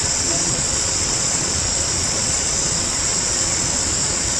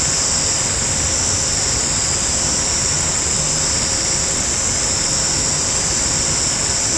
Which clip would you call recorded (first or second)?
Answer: second